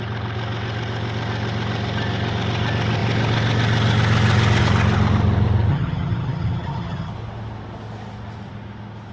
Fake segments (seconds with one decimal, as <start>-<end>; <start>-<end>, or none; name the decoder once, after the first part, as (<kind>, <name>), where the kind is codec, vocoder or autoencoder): 5.7-7.1 (vocoder, HiFi-GAN)